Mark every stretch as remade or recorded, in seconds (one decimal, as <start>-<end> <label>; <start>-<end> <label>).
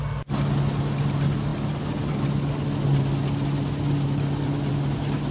0.0-5.3 recorded